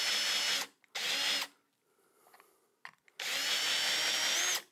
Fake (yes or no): no